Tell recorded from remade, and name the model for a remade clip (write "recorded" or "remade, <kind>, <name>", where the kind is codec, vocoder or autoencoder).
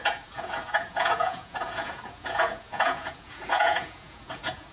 remade, vocoder, Vocos